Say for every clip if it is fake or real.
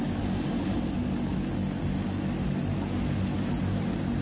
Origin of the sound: real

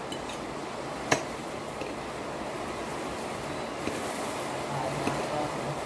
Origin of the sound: real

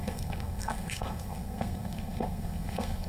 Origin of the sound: fake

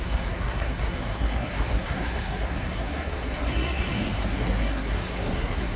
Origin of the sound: fake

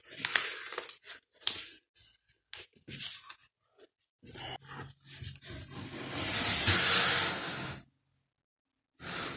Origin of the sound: real